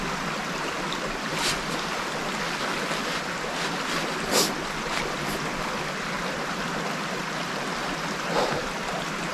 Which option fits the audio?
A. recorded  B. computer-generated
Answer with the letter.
A